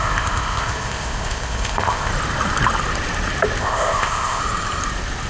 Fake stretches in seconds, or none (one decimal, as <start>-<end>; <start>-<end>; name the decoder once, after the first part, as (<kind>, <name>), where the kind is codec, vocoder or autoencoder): 0.0-2.1 (codec, ZipCodec); 3.6-4.4